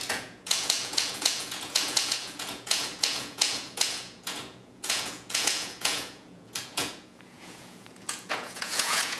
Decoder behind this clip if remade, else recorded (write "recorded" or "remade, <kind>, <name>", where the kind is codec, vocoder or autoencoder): remade, vocoder, Vocos